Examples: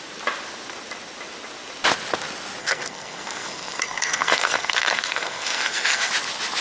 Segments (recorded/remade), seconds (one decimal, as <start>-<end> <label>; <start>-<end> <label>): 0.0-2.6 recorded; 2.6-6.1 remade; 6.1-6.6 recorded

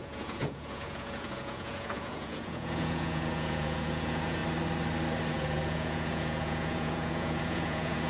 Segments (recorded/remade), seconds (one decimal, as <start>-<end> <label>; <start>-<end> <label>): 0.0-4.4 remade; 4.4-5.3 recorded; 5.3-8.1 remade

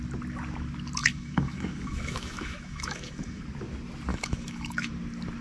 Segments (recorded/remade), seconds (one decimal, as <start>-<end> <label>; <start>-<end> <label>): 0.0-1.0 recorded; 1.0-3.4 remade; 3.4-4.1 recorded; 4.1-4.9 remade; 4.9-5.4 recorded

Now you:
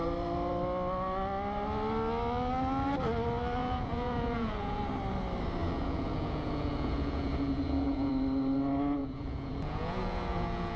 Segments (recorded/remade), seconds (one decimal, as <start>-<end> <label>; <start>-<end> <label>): 0.0-3.6 recorded; 3.6-4.8 remade; 4.8-5.6 recorded; 5.6-8.1 remade; 8.1-9.0 recorded; 9.0-10.8 remade

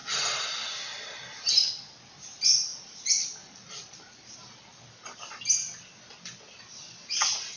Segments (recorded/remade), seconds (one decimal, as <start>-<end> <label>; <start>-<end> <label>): 0.0-7.6 recorded